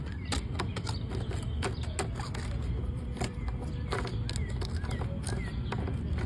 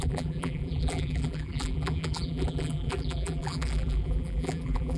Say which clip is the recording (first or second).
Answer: first